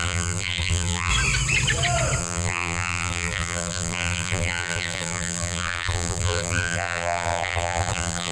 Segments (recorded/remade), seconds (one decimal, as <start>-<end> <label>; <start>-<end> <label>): 0.0-1.1 remade; 1.1-2.2 recorded; 2.2-8.3 remade

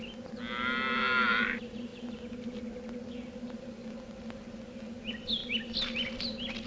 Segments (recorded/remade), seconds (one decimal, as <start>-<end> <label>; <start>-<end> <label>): 0.0-6.7 recorded